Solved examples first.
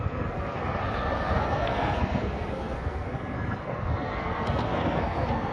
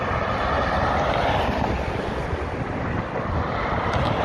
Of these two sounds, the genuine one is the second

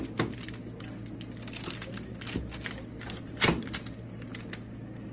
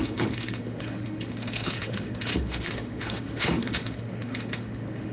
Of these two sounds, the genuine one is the first